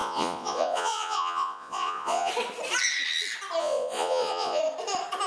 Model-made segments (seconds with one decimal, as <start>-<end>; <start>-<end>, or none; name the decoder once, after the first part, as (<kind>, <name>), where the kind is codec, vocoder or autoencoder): 0.0-2.3 (vocoder, Vocos); 3.6-4.6

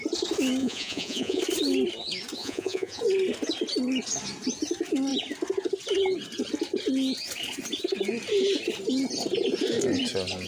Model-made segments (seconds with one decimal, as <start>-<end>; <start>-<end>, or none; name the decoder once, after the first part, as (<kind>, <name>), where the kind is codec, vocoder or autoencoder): 0.6-1.4 (vocoder, Vocos); 2.4-3.0

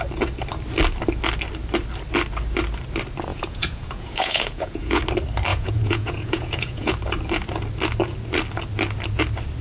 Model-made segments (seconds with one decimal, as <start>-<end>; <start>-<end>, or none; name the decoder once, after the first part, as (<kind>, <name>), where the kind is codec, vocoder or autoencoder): 3.3-5.0 (vocoder, Vocos); 5.5-6.9

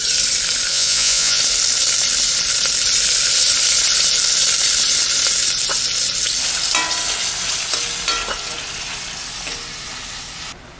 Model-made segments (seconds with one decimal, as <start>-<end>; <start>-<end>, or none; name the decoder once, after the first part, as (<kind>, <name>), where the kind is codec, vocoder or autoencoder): 0.7-1.4 (vocoder, Vocos)

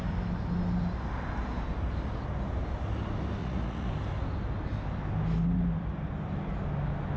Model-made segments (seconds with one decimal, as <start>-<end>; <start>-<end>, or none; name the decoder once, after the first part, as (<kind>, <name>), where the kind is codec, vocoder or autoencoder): 3.4-3.9 (vocoder, Vocos)

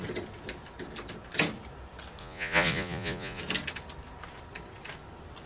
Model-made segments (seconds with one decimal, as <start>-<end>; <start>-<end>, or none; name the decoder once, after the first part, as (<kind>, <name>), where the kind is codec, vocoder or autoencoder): 2.2-3.4 (vocoder, Vocos)

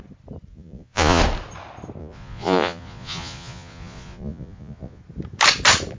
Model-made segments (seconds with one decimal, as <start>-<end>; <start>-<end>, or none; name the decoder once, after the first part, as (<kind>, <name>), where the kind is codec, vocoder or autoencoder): 0.5-1.2 (vocoder, Vocos); 2.0-5.0

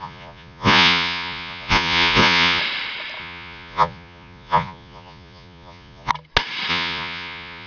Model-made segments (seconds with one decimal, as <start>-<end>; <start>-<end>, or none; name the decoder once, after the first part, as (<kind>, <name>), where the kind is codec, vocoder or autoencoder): 0.0-2.6 (vocoder, Vocos); 3.2-6.1; 6.7-7.7